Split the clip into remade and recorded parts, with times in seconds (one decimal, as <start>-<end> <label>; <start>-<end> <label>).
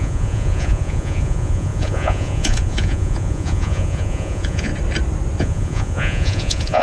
0.0-4.7 remade; 4.7-5.4 recorded; 5.4-6.8 remade